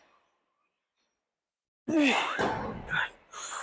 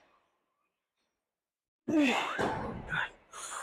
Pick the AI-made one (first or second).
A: second